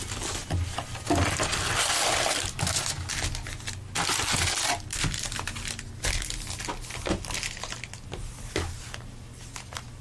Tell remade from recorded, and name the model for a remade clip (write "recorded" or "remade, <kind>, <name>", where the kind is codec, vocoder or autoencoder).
recorded